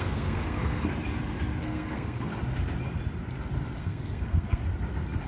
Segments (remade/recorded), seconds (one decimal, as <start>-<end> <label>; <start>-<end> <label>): 0.0-0.9 remade; 0.9-1.6 recorded; 1.6-2.3 remade; 2.3-3.8 recorded; 3.8-4.6 remade; 4.6-5.3 recorded

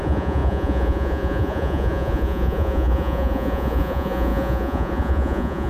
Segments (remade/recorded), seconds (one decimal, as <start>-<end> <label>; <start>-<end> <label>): 0.0-5.7 remade

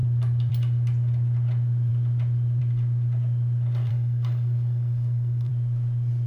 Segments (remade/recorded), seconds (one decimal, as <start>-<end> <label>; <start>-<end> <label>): 0.0-3.9 recorded; 3.9-5.5 remade; 5.5-6.3 recorded

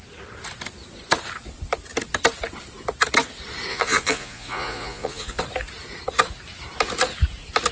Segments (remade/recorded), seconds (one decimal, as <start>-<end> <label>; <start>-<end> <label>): 0.0-3.7 recorded; 3.7-5.4 remade; 5.4-7.7 recorded

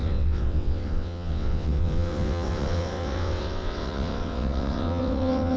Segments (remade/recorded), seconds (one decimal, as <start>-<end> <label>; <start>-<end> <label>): 0.0-5.6 remade

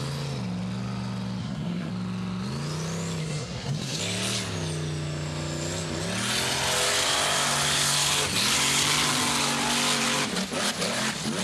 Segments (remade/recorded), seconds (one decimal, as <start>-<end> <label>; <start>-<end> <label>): 0.0-1.4 recorded; 1.4-1.9 remade; 1.9-3.2 recorded; 3.2-4.0 remade; 4.0-11.4 recorded

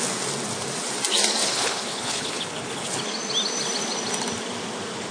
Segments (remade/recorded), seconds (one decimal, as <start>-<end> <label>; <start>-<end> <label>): 0.0-1.4 recorded; 1.4-2.9 remade; 2.9-5.1 recorded

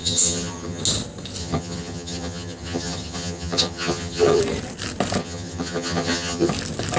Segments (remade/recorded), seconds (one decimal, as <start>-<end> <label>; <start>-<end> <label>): 0.0-0.8 remade; 0.8-1.4 recorded; 1.4-4.4 remade; 4.4-5.2 recorded; 5.2-6.5 remade; 6.5-7.0 recorded